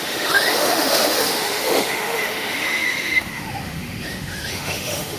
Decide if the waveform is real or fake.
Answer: fake